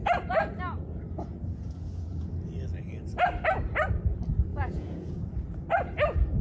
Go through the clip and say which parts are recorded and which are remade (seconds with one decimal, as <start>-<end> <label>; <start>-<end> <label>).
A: 0.0-1.3 recorded; 1.3-2.3 remade; 2.3-4.5 recorded; 4.5-5.3 remade; 5.3-6.4 recorded